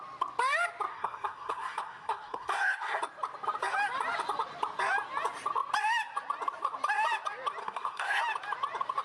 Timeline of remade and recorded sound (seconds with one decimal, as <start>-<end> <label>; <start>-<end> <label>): 0.0-0.9 recorded; 0.9-3.0 remade; 3.0-7.6 recorded; 7.6-8.2 remade; 8.2-9.0 recorded